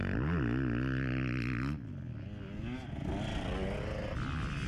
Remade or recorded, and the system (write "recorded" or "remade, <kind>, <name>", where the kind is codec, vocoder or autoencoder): recorded